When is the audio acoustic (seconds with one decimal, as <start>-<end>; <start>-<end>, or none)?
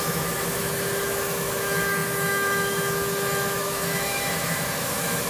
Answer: none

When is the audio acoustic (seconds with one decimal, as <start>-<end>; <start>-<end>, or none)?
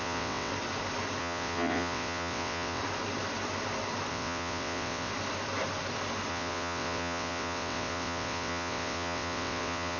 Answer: 0.5-1.2; 2.8-4.1; 5.1-6.3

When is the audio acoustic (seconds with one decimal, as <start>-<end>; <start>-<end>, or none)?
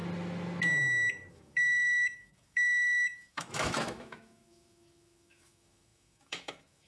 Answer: 0.0-1.3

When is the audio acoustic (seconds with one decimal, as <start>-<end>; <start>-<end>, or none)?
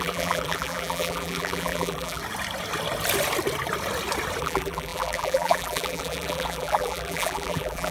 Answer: 2.2-4.4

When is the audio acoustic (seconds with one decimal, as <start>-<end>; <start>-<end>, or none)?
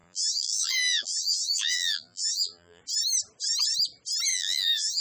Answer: 2.8-4.3